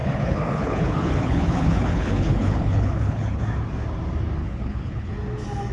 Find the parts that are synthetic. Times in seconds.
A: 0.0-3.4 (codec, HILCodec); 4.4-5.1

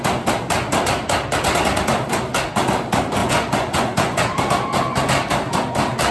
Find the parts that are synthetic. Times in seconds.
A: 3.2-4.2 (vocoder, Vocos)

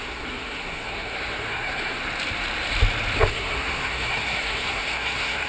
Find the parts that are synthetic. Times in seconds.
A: 0.0-2.0 (codec, SNAC); 3.3-5.5

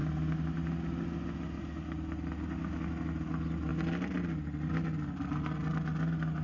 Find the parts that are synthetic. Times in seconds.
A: none

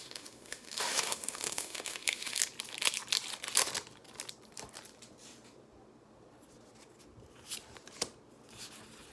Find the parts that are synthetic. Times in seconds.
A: 0.0-2.4 (autoencoder, DAC-VAE)

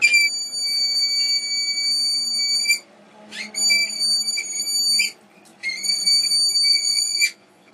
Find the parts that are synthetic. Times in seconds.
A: 6.7-7.7 (vocoder, Vocos)

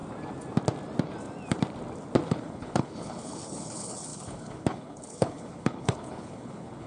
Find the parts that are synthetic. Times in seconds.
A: 2.3-6.9 (codec, HILCodec)

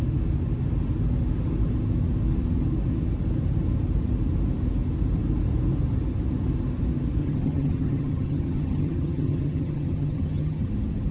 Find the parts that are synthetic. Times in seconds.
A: 7.2-10.7 (vocoder, HiFi-GAN)